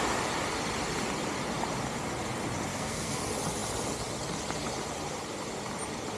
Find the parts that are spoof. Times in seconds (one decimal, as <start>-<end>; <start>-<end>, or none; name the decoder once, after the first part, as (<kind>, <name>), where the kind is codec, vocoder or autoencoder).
2.7-3.2 (codec, SNAC)